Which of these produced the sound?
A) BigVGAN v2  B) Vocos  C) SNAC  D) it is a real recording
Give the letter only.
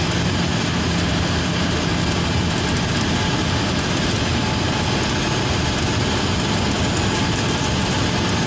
D